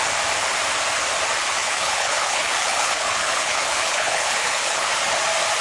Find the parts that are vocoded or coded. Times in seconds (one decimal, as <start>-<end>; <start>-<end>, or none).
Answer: 1.6-5.0